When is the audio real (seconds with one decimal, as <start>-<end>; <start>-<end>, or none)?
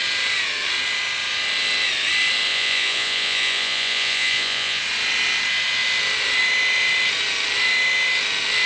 0.0-2.5; 4.8-8.7